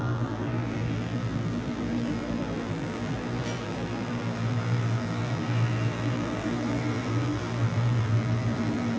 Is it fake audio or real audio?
fake